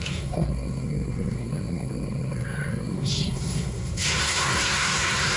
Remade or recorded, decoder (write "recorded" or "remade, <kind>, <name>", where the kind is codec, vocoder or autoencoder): remade, codec, SNAC